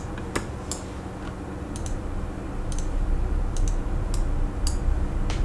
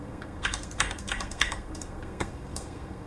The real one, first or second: first